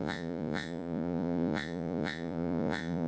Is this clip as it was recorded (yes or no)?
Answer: no